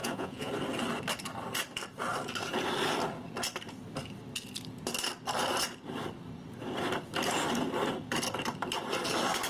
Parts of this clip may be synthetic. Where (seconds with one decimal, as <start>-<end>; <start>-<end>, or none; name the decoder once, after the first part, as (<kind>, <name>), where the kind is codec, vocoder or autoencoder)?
0.0-0.5 (vocoder, Vocos)